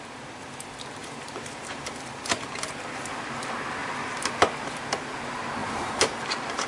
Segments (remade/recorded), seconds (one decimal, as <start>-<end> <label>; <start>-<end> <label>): 0.0-1.0 recorded; 1.0-2.3 remade; 2.3-3.8 recorded; 3.8-4.8 remade; 4.8-5.6 recorded; 5.6-6.7 remade

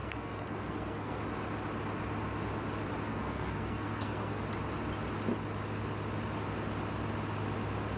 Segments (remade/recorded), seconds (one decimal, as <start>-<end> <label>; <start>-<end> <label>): 0.0-1.2 remade; 1.2-3.1 recorded; 3.1-4.4 remade; 4.4-8.0 recorded

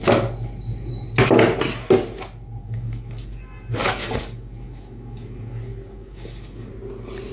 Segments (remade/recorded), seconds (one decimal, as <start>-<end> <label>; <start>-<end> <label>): 0.0-2.6 recorded; 2.6-3.4 remade; 3.4-3.8 recorded; 3.8-6.7 remade; 6.7-7.3 recorded

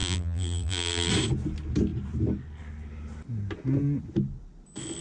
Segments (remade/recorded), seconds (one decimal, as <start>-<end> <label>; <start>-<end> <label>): 0.0-1.1 remade; 1.1-5.0 recorded

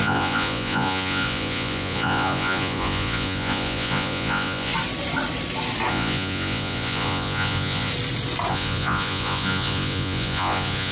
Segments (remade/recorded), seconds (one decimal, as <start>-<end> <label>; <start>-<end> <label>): 0.0-4.7 remade; 4.7-5.9 recorded; 5.9-7.9 remade; 7.9-8.5 recorded; 8.5-10.9 remade

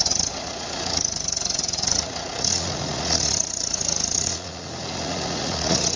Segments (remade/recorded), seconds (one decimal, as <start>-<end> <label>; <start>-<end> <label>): 0.0-6.0 remade

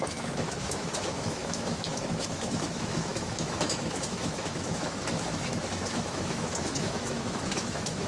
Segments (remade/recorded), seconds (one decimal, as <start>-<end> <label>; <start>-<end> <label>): 0.0-8.1 remade

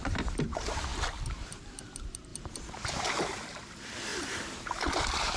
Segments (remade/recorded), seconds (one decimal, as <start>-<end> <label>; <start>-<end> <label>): 0.0-0.9 remade; 0.9-1.6 recorded; 1.6-5.4 remade